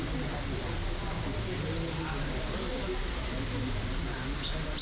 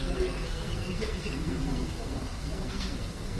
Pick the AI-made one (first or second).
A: second